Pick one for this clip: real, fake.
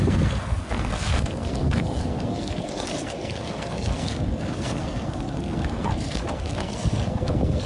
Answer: fake